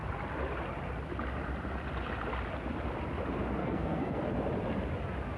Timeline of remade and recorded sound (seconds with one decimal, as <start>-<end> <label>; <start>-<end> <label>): 0.0-3.6 recorded; 3.6-4.2 remade; 4.2-5.4 recorded